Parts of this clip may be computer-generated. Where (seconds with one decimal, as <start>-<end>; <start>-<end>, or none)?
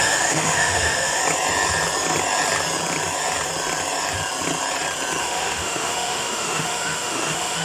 0.0-1.2; 5.2-7.6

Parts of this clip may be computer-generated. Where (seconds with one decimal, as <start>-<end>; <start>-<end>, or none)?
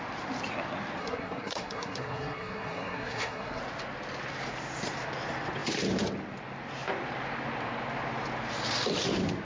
1.0-3.6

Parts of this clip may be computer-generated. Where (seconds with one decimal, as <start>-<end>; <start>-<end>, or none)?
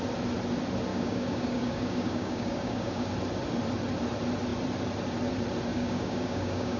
0.9-3.1; 5.7-6.8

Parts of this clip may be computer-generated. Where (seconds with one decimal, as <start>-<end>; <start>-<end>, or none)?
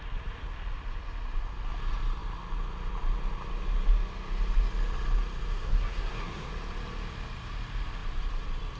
5.5-6.5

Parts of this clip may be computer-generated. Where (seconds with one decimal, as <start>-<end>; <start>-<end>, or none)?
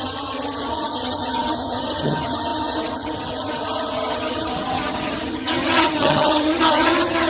0.0-7.3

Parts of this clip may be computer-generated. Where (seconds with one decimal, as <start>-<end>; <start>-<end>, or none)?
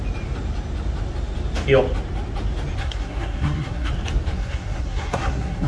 2.8-3.9; 4.3-5.7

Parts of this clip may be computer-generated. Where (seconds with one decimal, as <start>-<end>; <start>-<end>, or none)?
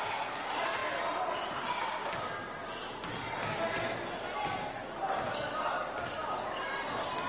none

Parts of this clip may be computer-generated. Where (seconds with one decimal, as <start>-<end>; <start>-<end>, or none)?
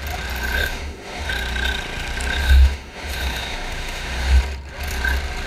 0.6-1.3; 2.4-4.4